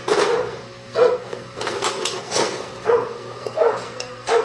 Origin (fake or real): fake